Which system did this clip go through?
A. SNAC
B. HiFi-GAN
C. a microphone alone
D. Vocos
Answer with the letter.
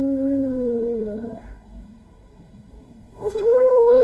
A